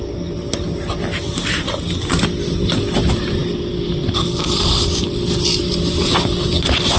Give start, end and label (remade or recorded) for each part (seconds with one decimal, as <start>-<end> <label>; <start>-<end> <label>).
0.0-7.0 recorded